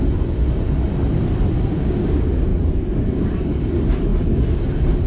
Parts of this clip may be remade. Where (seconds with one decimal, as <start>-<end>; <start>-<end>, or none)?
none